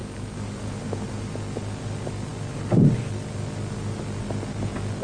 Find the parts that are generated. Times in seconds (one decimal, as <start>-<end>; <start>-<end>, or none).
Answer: 0.0-1.3